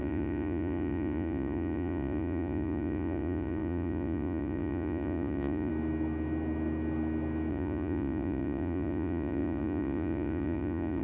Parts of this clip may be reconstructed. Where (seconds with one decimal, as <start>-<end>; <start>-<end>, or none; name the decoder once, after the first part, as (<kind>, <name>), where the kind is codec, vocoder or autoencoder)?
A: 0.0-5.7 (vocoder, Vocos); 7.5-11.0